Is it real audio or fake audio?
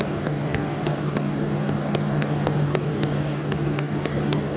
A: fake